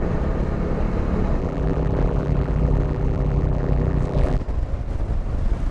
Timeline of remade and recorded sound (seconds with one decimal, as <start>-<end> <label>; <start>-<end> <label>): 0.0-1.4 recorded; 1.4-4.4 remade; 4.4-5.7 recorded

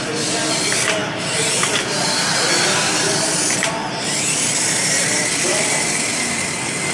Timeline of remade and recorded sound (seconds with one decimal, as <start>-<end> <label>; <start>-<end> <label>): 0.0-6.9 recorded

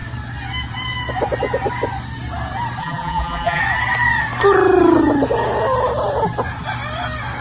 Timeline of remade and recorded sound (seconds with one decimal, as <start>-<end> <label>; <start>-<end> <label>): 0.0-2.8 recorded; 2.8-3.6 remade; 3.6-7.4 recorded

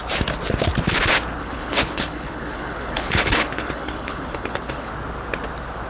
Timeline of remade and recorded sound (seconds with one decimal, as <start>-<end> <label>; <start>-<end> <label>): 0.0-1.4 recorded; 1.4-4.9 remade; 4.9-5.9 recorded